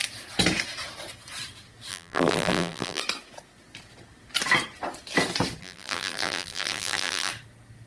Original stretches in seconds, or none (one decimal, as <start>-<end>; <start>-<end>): 0.0-1.9; 3.0-5.6; 7.3-7.9